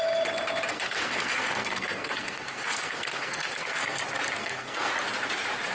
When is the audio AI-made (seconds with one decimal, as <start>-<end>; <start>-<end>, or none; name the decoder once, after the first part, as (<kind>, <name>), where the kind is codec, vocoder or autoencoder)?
0.7-4.0 (codec, SNAC); 4.4-4.9